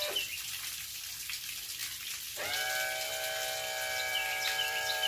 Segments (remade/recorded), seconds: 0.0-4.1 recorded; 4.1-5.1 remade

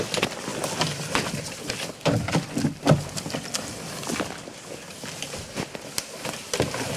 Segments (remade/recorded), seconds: 0.0-7.0 recorded

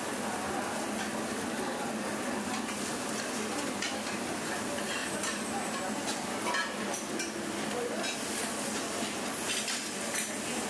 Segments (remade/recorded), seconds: 0.0-5.0 recorded; 5.0-5.6 remade; 5.6-10.7 recorded

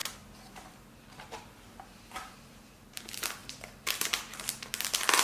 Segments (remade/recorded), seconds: 0.0-3.0 remade; 3.0-3.4 recorded; 3.4-4.7 remade; 4.7-5.2 recorded

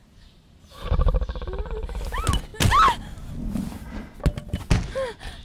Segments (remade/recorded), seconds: 0.0-1.2 remade; 1.2-5.4 recorded

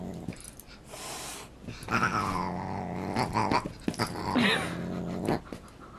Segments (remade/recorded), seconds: 0.0-6.0 recorded

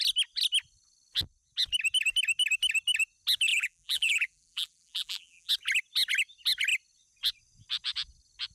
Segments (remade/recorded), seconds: 0.0-3.5 recorded; 3.5-5.5 remade; 5.5-8.5 recorded